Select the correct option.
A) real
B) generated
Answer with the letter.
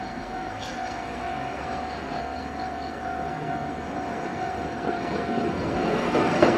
B